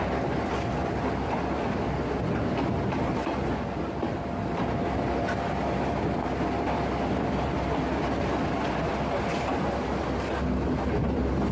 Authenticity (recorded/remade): recorded